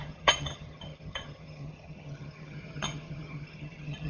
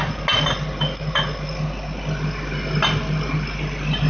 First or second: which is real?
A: second